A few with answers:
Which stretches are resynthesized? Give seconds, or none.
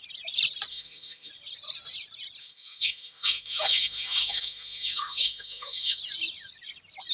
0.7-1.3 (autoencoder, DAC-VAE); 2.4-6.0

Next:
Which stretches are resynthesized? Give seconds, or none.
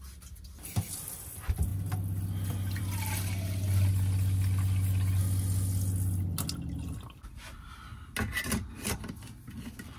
none